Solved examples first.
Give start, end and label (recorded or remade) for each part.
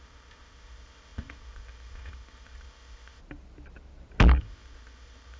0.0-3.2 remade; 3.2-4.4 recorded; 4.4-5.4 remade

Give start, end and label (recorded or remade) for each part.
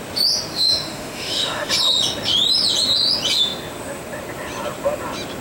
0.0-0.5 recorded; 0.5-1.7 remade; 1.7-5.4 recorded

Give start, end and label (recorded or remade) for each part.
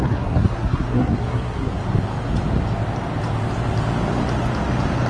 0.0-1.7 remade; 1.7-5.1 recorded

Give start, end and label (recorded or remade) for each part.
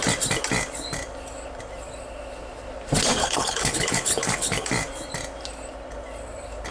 0.0-3.2 recorded; 3.2-4.7 remade; 4.7-6.7 recorded